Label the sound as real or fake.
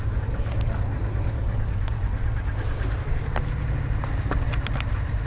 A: fake